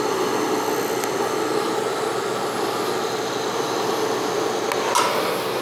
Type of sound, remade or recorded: recorded